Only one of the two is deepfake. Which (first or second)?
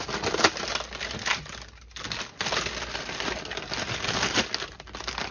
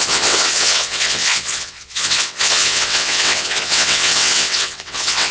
second